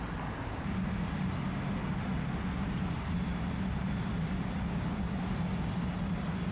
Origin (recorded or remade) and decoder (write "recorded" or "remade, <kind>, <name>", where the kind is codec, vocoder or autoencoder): recorded